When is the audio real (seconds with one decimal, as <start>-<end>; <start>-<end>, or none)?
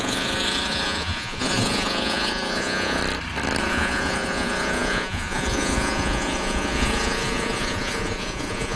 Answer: 3.0-3.6